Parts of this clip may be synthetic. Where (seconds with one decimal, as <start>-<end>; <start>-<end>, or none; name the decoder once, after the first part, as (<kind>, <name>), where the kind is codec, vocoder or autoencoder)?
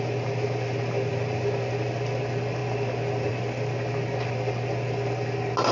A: 1.2-2.2 (vocoder, BigVGAN v2)